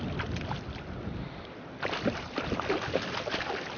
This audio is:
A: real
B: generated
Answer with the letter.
A